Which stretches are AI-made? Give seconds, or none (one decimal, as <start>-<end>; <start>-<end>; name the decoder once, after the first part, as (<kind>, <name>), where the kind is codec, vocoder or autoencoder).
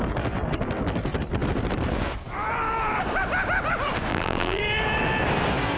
4.1-4.6 (vocoder, BigVGAN v2)